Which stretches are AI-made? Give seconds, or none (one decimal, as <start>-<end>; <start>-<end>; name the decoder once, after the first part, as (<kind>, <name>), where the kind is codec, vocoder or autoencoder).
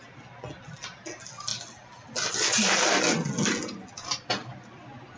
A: none